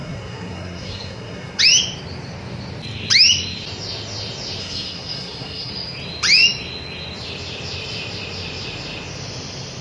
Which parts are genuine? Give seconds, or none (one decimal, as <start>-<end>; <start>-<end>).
1.6-4.6; 5.7-9.8